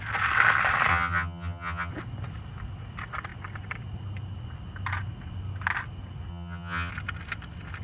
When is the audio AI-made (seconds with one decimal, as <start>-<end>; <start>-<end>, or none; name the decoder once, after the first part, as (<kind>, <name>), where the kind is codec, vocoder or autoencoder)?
0.9-1.9 (vocoder, HiFi-GAN); 6.3-6.9